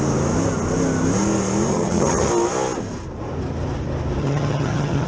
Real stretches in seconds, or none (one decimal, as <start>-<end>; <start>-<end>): 0.0-1.7; 2.3-4.2